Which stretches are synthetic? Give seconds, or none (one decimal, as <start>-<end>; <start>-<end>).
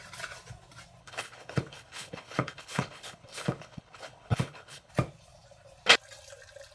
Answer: 1.0-4.9